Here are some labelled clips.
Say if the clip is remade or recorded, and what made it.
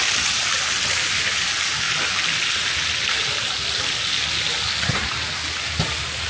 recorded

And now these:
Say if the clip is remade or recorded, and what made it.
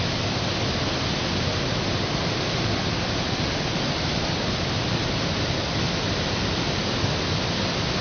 recorded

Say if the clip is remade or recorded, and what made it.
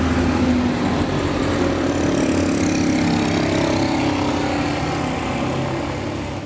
recorded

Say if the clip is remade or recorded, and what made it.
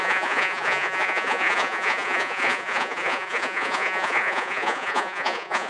remade, vocoder, Vocos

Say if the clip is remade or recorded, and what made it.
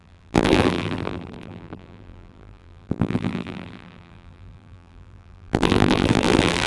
remade, vocoder, BigVGAN v2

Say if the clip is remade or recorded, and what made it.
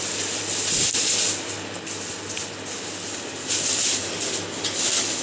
recorded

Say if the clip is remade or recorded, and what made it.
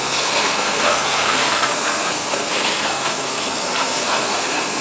remade, codec, SNAC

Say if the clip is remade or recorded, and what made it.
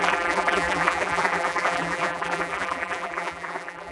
remade, vocoder, BigVGAN v2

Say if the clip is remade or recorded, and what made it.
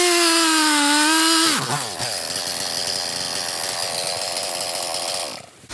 recorded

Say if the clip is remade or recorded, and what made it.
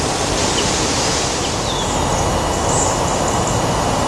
recorded